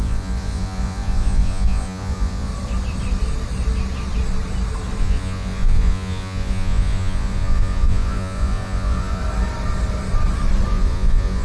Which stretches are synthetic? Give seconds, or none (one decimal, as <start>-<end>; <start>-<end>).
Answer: 0.0-2.5; 5.0-9.2; 10.7-11.4

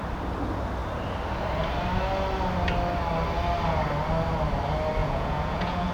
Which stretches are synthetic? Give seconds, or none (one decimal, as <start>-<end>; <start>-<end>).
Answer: 5.0-5.9

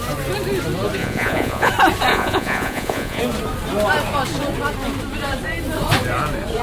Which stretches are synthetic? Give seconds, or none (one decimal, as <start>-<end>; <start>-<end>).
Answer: 1.0-1.7; 2.1-3.2